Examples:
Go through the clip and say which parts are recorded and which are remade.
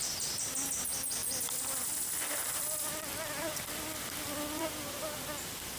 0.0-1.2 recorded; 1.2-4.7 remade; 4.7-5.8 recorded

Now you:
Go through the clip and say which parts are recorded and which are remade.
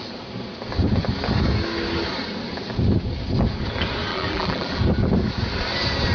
0.0-4.1 recorded; 4.1-4.8 remade; 4.8-6.1 recorded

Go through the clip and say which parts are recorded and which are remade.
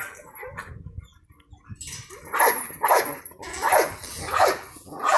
0.0-1.1 remade; 1.1-2.5 recorded; 2.5-5.2 remade